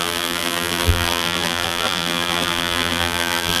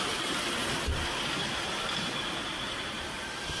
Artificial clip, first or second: first